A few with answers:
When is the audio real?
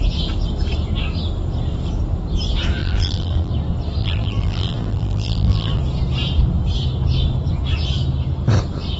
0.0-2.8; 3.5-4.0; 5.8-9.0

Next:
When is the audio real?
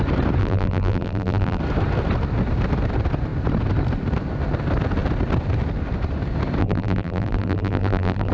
0.0-0.4; 1.6-6.6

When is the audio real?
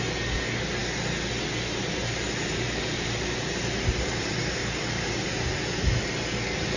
0.0-2.0; 6.1-6.8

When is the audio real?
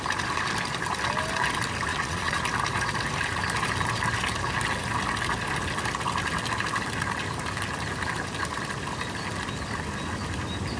0.0-1.9; 2.4-10.8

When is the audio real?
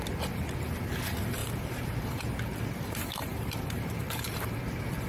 0.0-1.4; 4.5-5.1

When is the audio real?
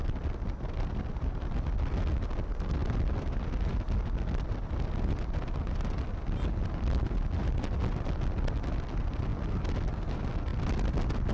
0.0-11.3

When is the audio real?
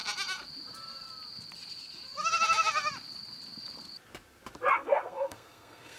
0.0-4.7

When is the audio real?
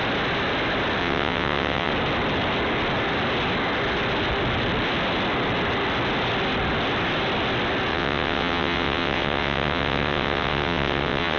0.0-1.0; 1.9-7.9